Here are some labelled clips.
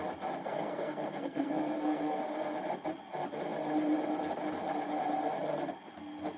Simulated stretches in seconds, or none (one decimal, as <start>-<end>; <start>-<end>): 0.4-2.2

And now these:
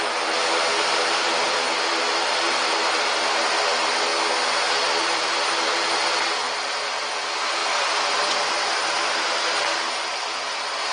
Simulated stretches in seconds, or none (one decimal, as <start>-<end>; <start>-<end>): 0.0-0.4; 1.2-4.1; 4.7-10.9

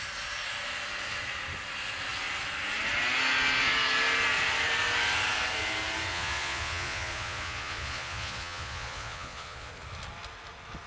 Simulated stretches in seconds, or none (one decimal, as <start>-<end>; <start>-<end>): 6.1-9.7